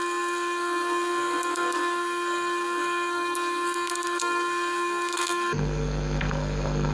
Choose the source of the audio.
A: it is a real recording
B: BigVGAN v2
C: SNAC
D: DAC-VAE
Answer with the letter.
C